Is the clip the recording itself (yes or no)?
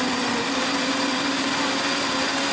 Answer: yes